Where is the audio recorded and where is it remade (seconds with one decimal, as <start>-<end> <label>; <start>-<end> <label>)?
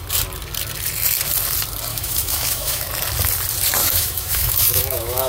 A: 0.0-1.9 recorded; 1.9-2.9 remade; 2.9-3.8 recorded; 3.8-5.3 remade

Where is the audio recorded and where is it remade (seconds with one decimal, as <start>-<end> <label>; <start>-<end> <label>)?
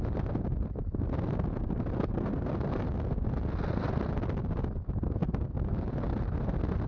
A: 0.0-6.9 recorded